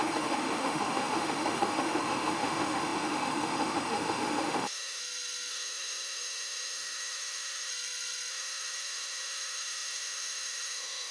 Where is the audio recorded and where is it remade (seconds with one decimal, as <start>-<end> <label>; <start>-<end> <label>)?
0.0-5.0 remade; 5.0-5.5 recorded; 5.5-7.7 remade; 7.7-8.3 recorded; 8.3-11.1 remade